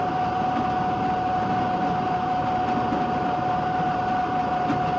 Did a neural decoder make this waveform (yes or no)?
no